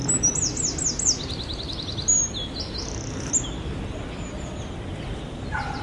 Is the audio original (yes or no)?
yes